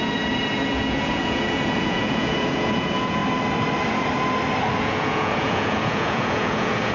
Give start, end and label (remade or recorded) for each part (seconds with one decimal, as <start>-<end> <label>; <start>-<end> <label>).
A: 0.0-3.2 remade; 3.2-4.8 recorded; 4.8-6.9 remade